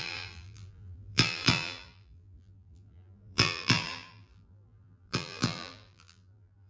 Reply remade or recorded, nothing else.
remade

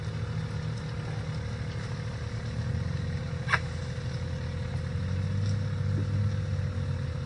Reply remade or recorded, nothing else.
recorded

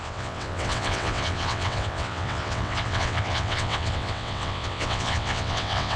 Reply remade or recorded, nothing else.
remade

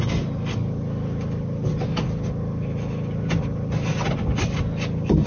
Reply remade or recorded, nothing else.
recorded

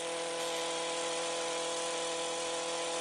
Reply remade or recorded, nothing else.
recorded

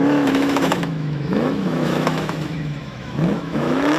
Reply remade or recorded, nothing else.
remade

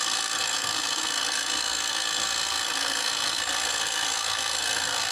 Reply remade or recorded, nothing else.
remade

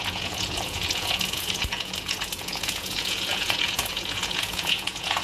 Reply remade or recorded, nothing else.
remade